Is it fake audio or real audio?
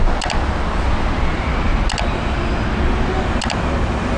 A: real